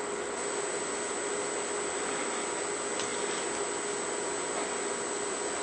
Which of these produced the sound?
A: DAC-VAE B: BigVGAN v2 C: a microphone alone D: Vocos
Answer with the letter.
C